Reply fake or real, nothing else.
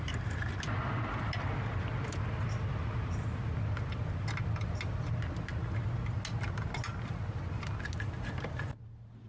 real